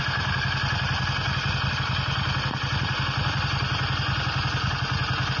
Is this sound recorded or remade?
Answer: recorded